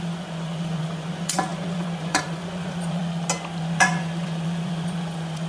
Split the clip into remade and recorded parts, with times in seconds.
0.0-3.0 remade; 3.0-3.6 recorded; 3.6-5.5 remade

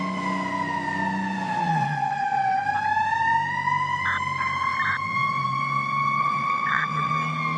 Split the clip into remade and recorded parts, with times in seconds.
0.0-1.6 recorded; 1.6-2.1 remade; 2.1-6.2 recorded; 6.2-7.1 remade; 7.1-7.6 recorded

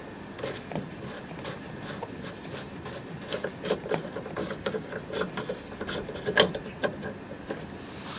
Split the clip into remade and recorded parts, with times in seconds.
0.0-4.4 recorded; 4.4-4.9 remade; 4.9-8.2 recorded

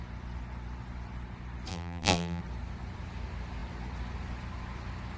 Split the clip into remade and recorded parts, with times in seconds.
0.0-1.7 recorded; 1.7-2.4 remade; 2.4-5.2 recorded

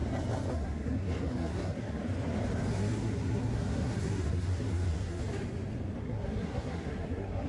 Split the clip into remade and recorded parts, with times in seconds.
0.0-0.5 recorded; 0.5-2.0 remade; 2.0-2.7 recorded; 2.7-5.2 remade; 5.2-6.0 recorded; 6.0-7.5 remade